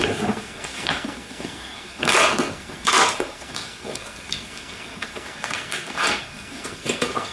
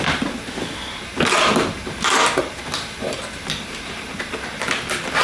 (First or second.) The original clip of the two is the second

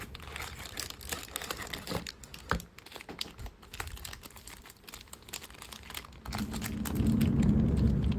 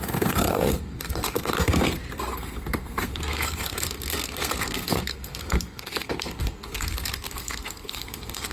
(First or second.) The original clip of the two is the first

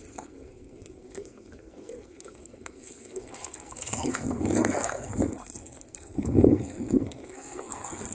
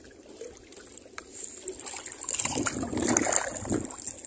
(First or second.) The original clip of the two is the second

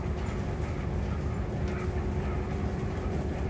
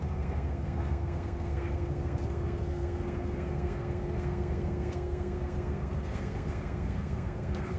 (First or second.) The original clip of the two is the first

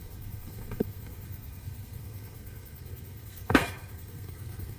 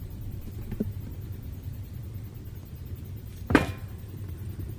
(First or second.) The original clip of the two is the second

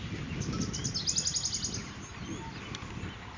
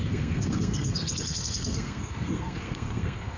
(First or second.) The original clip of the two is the first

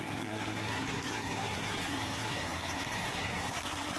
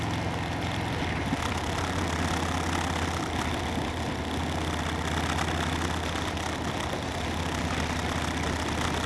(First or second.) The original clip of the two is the second